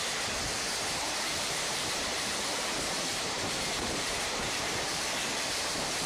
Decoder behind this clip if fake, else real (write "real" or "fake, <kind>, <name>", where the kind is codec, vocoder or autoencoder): fake, vocoder, BigVGAN v2